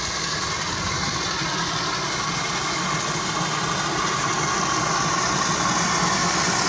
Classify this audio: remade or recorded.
recorded